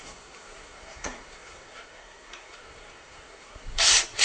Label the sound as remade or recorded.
remade